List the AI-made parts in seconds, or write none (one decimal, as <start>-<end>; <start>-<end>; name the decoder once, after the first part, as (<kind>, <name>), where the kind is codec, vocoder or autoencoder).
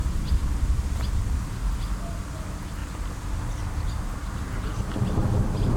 none